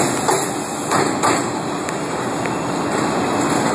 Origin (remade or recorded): recorded